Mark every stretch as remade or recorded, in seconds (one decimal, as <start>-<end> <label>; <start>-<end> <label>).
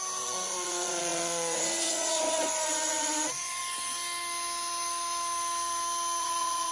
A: 0.0-3.6 remade; 3.6-6.2 recorded; 6.2-6.7 remade